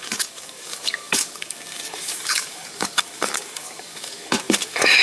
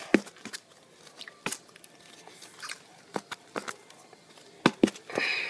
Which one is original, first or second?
second